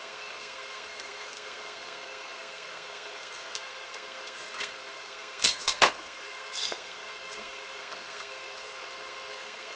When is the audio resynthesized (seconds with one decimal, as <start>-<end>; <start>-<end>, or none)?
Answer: 0.0-9.8